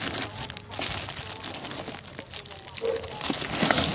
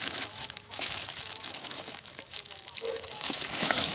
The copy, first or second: second